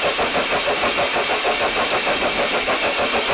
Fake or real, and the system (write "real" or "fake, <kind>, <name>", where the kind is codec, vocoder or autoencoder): real